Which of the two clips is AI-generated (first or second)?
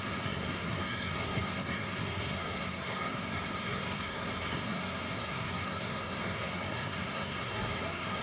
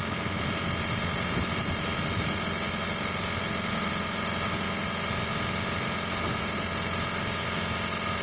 first